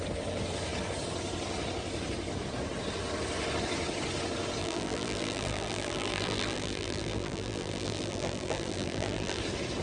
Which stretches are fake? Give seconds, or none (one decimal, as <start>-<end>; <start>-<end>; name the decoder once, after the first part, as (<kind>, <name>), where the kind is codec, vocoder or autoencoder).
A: 4.6-9.4 (vocoder, BigVGAN v2)